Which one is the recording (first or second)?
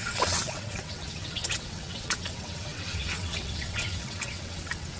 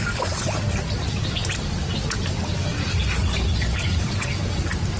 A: second